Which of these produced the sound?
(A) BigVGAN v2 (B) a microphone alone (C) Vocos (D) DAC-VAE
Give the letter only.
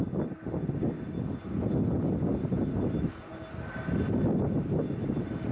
B